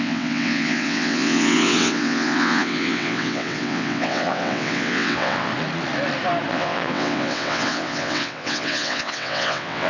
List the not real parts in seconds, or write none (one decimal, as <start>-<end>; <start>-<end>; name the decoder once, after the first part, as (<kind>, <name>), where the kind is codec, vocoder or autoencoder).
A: 0.0-5.5 (vocoder, WaveNeXt); 6.5-9.9